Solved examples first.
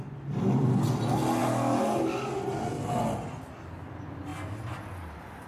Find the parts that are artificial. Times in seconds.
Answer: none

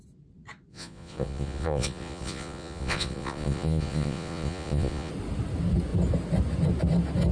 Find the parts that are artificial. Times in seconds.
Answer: 0.7-5.1 (vocoder, Vocos)

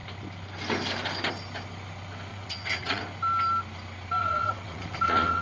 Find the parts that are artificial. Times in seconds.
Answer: 2.3-3.0 (vocoder, WaveNeXt); 4.2-5.4

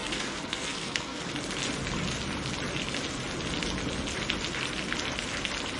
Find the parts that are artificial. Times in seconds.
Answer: 0.0-1.3 (codec, SNAC)